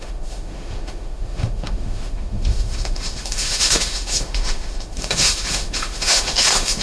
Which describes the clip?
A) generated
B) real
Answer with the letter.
A